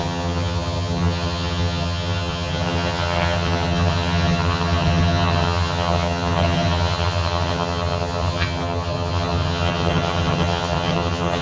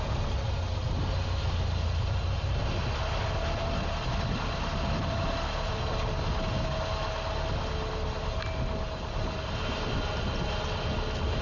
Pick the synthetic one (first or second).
first